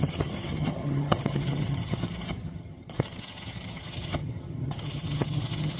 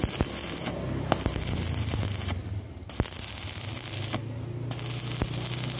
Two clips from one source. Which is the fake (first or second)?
first